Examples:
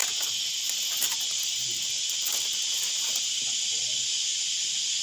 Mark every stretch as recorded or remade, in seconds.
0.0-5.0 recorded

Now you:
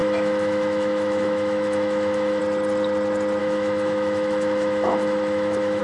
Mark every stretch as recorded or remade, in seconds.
0.0-2.4 remade; 2.4-3.4 recorded; 3.4-5.8 remade